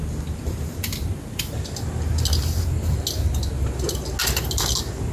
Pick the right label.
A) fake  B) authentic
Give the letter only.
B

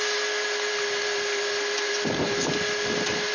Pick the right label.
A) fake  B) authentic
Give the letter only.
B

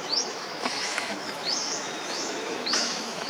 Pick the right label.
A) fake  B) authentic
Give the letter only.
A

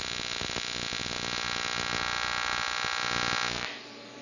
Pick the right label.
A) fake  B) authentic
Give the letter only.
B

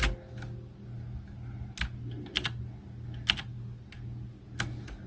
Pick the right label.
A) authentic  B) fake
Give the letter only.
A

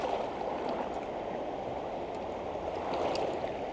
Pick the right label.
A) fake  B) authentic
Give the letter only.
B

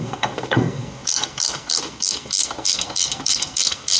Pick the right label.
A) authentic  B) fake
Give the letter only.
B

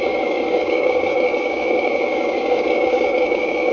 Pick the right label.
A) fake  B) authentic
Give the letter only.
A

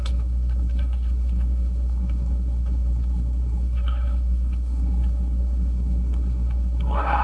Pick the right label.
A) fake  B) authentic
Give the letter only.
A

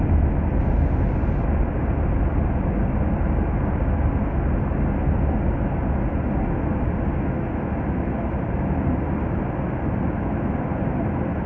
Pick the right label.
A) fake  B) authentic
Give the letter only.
B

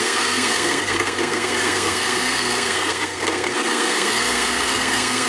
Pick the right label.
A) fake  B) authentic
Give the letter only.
A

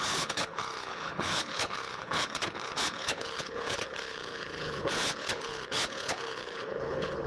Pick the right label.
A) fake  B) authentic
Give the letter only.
A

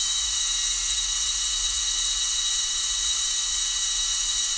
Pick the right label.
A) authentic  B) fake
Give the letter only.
B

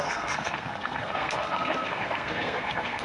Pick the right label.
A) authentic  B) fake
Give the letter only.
B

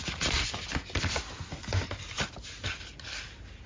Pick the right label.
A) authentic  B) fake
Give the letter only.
A